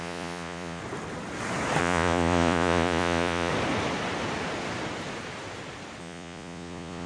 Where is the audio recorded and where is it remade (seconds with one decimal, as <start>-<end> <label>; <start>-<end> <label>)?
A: 0.0-0.8 remade; 0.8-1.8 recorded; 1.8-3.5 remade; 3.5-6.0 recorded; 6.0-7.1 remade